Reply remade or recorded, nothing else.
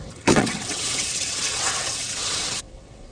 remade